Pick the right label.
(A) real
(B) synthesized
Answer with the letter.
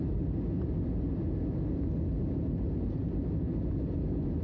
A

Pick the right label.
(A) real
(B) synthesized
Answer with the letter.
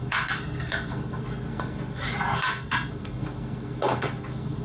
B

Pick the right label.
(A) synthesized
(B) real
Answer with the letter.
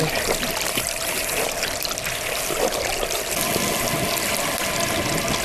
B